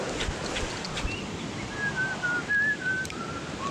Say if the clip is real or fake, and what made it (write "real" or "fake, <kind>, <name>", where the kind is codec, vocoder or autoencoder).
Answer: real